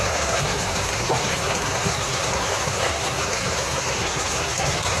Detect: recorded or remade remade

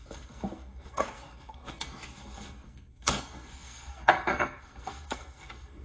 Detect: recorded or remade remade